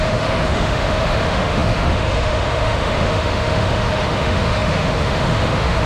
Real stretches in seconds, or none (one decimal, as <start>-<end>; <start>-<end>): none